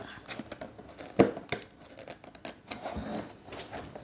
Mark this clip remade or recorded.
recorded